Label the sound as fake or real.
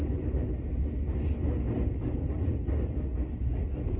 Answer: real